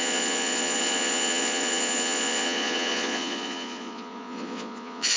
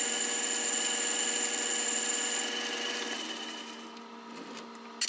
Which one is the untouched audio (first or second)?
second